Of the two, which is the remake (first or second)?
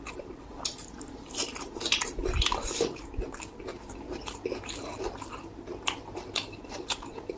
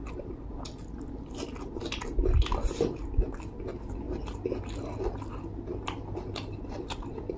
first